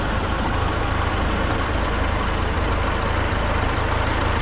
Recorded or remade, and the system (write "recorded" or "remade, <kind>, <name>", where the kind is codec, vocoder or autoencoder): recorded